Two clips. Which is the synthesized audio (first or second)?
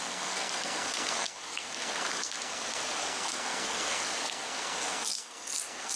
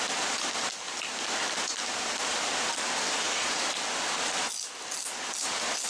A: first